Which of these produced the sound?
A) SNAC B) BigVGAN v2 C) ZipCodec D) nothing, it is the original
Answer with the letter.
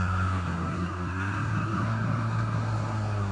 A